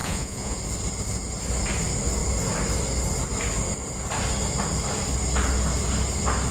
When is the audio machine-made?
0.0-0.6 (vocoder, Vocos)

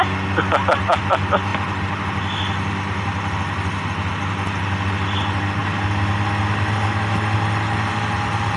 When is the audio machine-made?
none

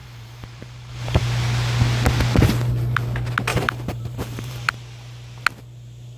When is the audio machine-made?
0.0-1.2 (vocoder, BigVGAN v2); 3.5-4.7

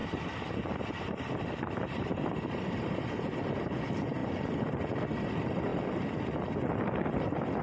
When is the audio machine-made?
none

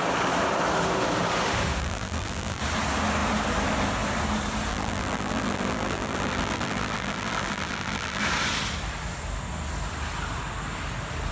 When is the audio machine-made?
1.8-2.6 (vocoder, BigVGAN v2); 4.7-8.2